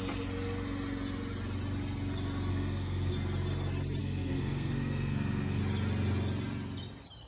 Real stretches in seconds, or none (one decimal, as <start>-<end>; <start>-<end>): 0.0-2.5; 3.1-4.0; 5.6-7.3